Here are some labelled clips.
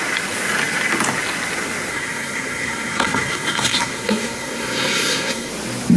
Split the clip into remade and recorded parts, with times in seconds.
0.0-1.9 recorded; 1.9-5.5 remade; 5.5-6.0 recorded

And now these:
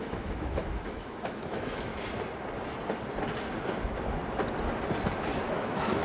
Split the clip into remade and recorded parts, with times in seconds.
0.0-1.9 remade; 1.9-5.5 recorded; 5.5-6.0 remade